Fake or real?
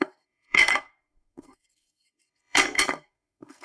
fake